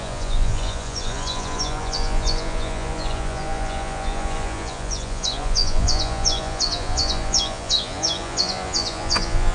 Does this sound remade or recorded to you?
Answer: remade